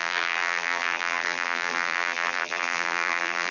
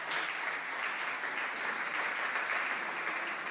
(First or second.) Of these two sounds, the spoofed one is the first